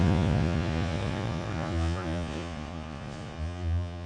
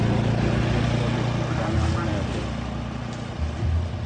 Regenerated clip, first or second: first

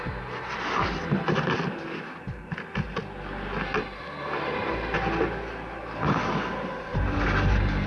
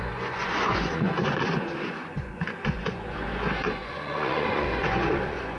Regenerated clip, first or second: second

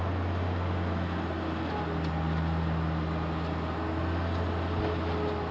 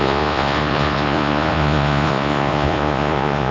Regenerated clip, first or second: second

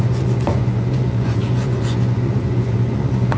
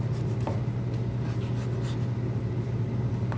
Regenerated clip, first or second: first